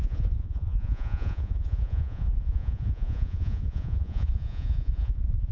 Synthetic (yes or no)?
yes